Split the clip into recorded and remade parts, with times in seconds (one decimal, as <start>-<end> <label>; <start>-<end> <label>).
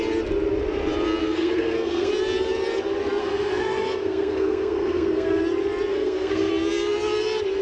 0.0-1.2 recorded; 1.2-2.1 remade; 2.1-3.2 recorded; 3.2-5.4 remade; 5.4-5.9 recorded; 5.9-6.5 remade; 6.5-7.6 recorded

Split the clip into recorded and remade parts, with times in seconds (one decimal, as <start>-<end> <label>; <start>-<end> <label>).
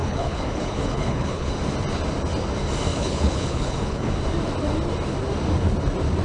0.0-1.5 remade; 1.5-2.9 recorded; 2.9-4.1 remade; 4.1-6.2 recorded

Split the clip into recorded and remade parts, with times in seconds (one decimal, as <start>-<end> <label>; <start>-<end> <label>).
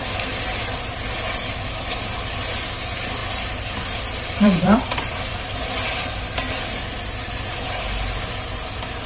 0.0-3.2 recorded; 3.2-5.6 remade; 5.6-9.1 recorded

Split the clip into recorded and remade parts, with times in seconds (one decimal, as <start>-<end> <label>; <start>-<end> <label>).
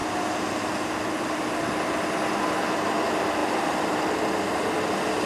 0.0-5.3 recorded